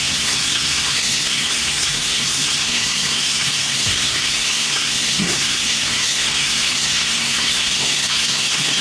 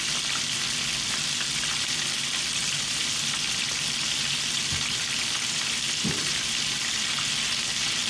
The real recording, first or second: second